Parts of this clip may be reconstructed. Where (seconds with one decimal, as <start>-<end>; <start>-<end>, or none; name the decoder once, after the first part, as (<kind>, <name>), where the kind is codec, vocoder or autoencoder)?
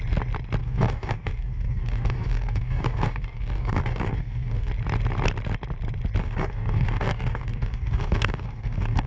0.6-4.7 (codec, DAC); 6.2-9.1